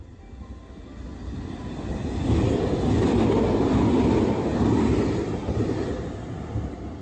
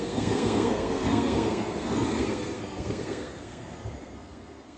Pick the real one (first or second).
first